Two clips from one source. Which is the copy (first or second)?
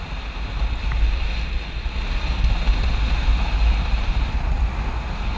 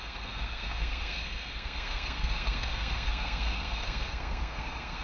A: second